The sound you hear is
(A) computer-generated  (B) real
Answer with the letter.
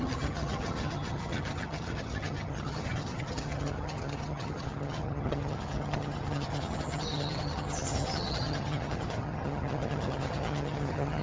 A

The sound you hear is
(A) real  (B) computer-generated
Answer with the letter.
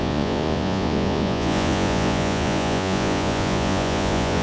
B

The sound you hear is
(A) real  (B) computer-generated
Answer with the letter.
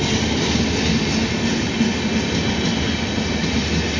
A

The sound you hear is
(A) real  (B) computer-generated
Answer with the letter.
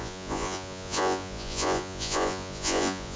B